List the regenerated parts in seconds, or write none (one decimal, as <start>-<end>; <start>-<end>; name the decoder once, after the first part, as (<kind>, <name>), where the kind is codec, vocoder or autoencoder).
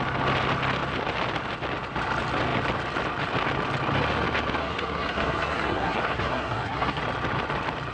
4.6-7.0 (codec, SNAC)